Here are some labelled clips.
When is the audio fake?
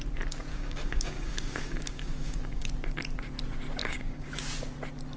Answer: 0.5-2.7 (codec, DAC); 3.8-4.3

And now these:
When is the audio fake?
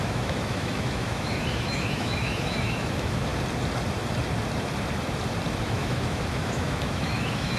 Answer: 0.0-3.3 (autoencoder, DAC-VAE); 5.6-7.6